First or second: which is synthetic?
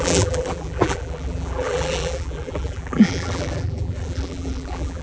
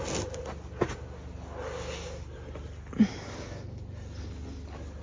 first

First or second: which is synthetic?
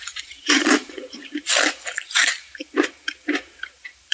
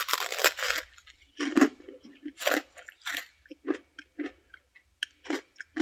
first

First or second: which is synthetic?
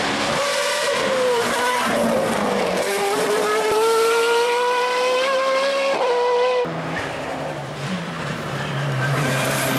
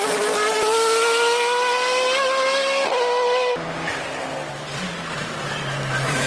first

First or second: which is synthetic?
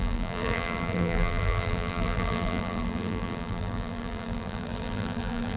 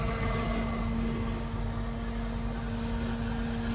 first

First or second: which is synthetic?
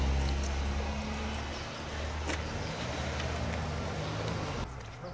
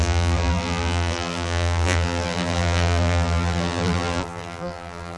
second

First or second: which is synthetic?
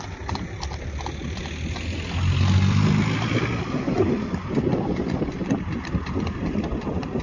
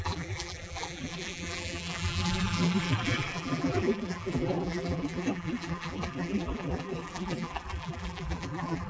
second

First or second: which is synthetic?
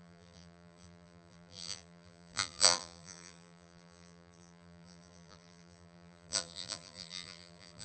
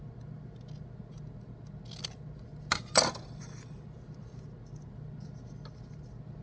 first